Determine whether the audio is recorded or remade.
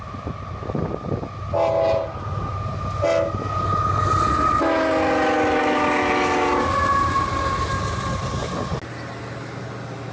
recorded